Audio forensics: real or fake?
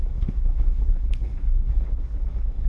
fake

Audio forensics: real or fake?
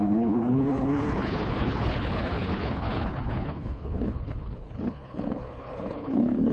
fake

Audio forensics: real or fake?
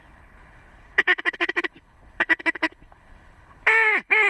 fake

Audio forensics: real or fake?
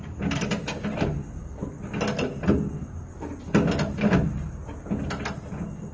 real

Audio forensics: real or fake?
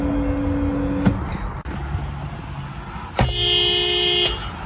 real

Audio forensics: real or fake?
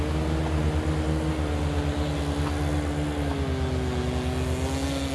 real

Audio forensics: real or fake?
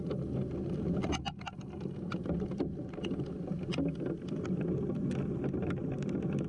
real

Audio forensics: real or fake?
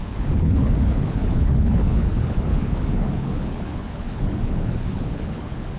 fake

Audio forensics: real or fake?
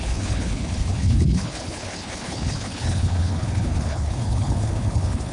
fake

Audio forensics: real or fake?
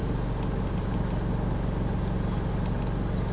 real